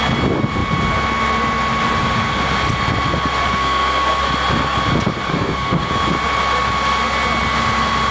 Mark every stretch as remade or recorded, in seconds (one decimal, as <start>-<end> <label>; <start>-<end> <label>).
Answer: 0.0-3.5 recorded; 3.5-4.2 remade; 4.2-5.3 recorded; 5.3-5.9 remade; 5.9-8.1 recorded

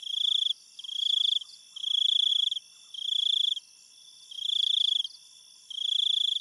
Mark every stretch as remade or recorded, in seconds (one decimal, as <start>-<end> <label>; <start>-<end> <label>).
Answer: 0.0-6.4 recorded